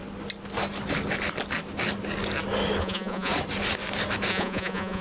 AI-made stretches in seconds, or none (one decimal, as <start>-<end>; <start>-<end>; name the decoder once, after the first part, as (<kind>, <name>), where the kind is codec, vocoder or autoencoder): 2.8-3.3 (vocoder, Vocos); 4.3-5.0